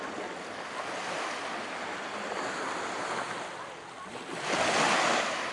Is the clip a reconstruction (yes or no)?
no